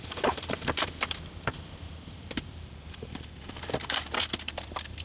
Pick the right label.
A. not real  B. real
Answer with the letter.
A